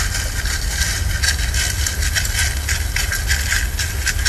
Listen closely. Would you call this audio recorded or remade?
recorded